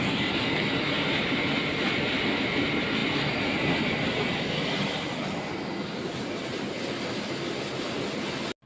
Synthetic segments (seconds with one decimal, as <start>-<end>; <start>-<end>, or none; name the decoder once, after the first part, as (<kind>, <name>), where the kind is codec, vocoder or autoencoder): none